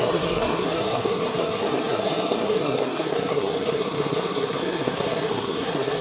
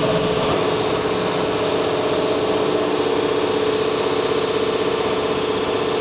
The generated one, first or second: first